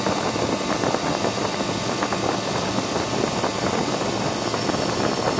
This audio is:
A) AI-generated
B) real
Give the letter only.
A